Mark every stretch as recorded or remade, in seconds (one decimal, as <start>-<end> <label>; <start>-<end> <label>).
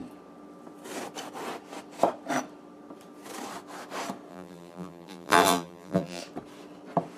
0.0-4.3 recorded; 4.3-6.2 remade; 6.2-7.2 recorded